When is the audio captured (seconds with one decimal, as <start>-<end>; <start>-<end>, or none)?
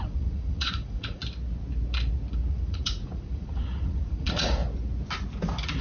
1.2-2.5; 4.6-5.8